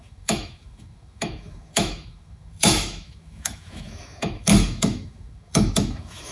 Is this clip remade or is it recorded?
remade